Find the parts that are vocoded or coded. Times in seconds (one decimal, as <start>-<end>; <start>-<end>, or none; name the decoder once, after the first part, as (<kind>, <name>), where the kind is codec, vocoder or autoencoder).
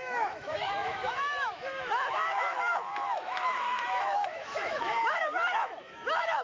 0.0-6.4 (autoencoder, DAC-VAE)